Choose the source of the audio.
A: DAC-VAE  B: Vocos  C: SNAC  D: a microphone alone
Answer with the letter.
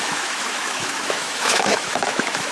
A